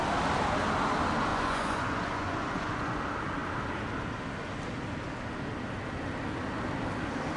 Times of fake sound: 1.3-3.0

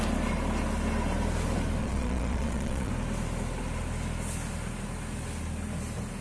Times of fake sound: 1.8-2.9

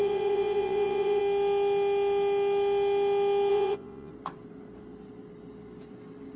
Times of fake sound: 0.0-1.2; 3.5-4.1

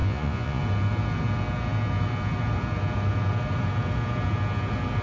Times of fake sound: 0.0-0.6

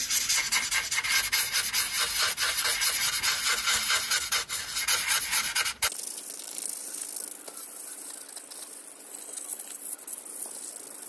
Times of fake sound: none

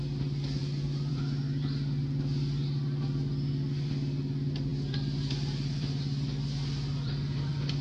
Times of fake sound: none

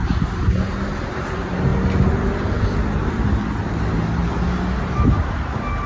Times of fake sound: none

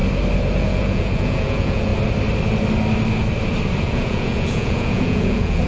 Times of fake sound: 0.6-1.9; 3.8-5.7